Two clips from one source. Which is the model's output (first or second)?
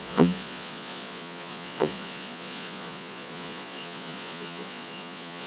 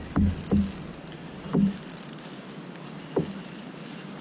first